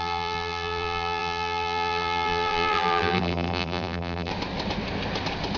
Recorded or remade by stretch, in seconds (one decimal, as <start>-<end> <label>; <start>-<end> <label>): 0.0-4.3 remade; 4.3-5.6 recorded